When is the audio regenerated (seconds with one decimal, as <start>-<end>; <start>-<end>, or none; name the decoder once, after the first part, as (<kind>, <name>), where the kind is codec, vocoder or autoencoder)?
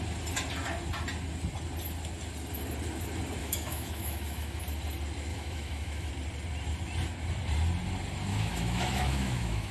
3.4-4.6 (autoencoder, DAC-VAE); 5.3-6.1; 8.3-9.7